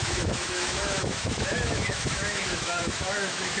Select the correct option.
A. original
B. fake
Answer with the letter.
B